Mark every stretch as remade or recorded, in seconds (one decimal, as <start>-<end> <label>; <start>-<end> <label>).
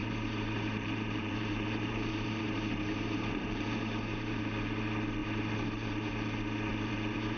0.0-4.4 remade; 4.4-5.2 recorded; 5.2-6.1 remade; 6.1-6.7 recorded; 6.7-7.4 remade